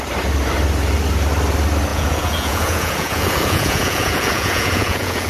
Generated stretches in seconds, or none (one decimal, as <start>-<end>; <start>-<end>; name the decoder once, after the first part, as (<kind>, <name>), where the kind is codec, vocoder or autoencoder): 1.9-5.3 (vocoder, Vocos)